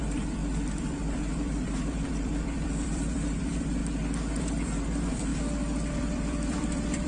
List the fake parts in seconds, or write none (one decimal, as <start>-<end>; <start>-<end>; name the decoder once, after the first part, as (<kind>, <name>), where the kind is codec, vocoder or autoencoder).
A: 0.0-3.8 (vocoder, BigVGAN v2); 4.3-5.3; 5.9-7.1